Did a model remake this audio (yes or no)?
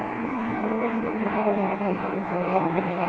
yes